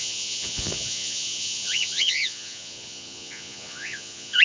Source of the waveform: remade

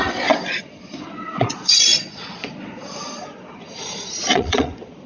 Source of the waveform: remade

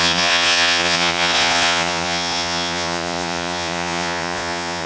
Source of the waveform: remade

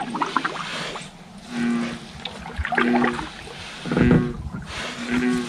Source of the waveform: recorded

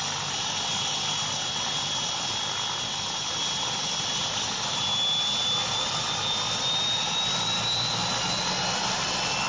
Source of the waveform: recorded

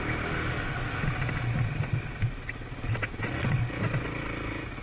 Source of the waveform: recorded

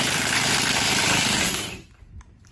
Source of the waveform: remade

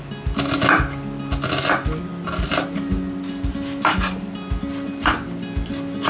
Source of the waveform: recorded